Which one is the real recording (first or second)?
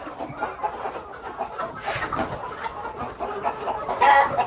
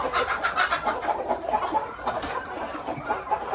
first